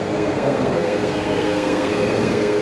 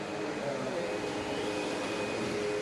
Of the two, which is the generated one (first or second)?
first